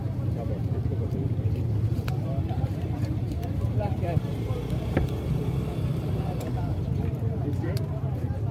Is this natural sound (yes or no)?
no